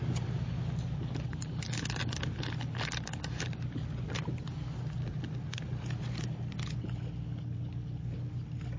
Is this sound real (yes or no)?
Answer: yes